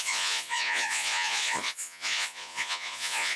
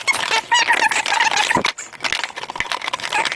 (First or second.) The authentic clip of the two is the second